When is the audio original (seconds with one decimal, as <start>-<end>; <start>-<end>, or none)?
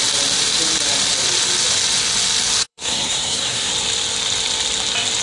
0.0-2.6; 3.7-5.2